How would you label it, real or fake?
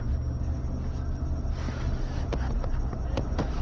real